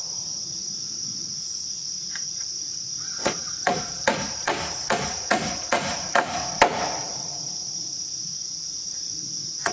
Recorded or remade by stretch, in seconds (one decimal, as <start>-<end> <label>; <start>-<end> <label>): 0.0-6.4 remade; 6.4-7.0 recorded; 7.0-9.7 remade